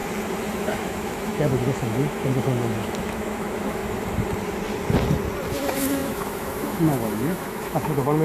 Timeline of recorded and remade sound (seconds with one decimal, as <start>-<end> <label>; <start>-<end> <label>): 0.0-0.6 recorded; 0.6-3.8 remade; 3.8-5.5 recorded; 5.5-8.2 remade